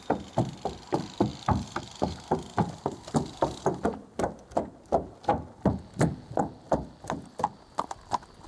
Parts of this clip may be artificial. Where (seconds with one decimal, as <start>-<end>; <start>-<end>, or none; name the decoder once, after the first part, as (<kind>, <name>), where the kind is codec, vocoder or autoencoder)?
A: none